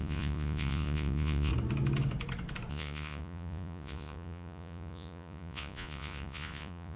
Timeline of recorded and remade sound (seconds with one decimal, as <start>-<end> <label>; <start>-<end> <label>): 0.0-1.5 remade; 1.5-2.7 recorded; 2.7-7.0 remade